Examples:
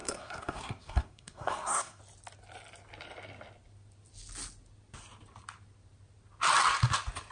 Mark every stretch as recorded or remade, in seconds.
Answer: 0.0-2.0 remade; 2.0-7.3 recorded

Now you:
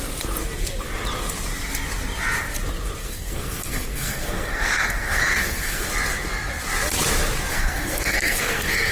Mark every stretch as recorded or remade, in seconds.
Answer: 0.0-3.0 recorded; 3.0-5.9 remade; 5.9-7.5 recorded; 7.5-8.9 remade

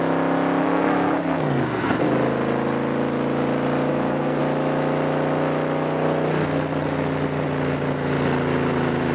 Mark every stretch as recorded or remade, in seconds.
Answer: 0.0-0.6 recorded; 0.6-2.0 remade; 2.0-3.9 recorded; 3.9-4.4 remade; 4.4-9.1 recorded

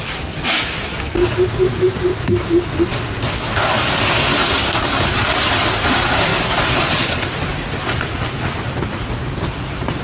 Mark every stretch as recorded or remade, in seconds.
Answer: 0.0-10.0 recorded